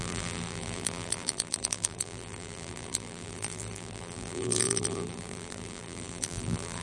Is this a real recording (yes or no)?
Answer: no